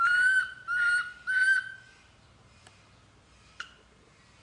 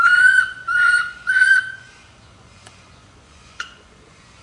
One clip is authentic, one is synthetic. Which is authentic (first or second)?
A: first